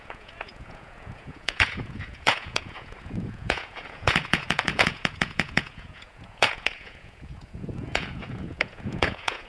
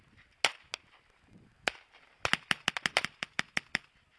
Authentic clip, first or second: second